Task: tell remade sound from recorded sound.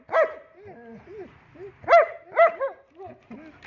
recorded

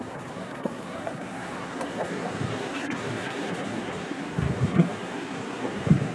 remade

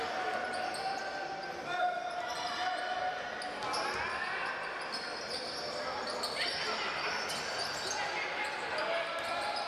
recorded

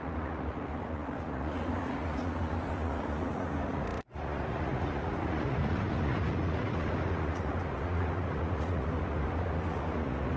remade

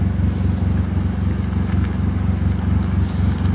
recorded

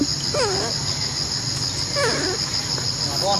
recorded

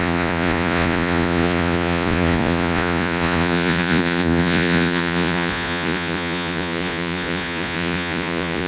remade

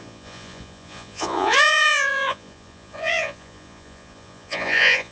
remade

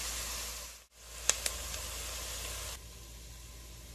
recorded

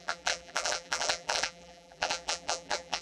remade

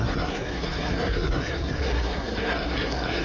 remade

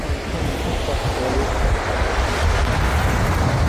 recorded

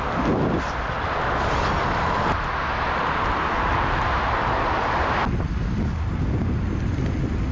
recorded